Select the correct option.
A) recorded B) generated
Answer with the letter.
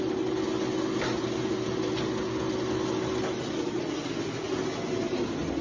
A